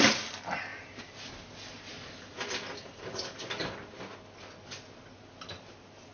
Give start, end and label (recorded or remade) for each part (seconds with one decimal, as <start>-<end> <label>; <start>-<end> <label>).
0.0-6.1 recorded